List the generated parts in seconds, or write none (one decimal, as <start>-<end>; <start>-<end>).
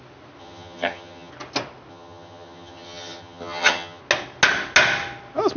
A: 0.4-1.3; 1.9-4.0